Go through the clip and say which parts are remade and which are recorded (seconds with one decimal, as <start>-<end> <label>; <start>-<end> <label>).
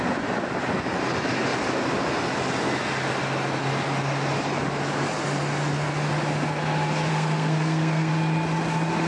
0.0-7.1 recorded; 7.1-8.1 remade; 8.1-9.1 recorded